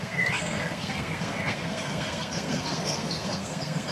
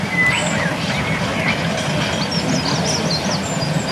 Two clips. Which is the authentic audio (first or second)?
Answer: second